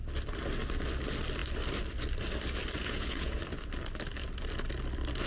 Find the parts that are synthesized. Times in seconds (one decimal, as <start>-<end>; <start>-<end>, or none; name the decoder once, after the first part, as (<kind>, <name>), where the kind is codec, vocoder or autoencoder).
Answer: 2.8-3.4 (vocoder, Vocos)